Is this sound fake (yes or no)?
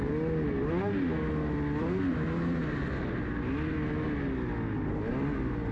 no